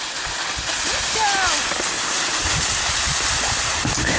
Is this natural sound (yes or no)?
no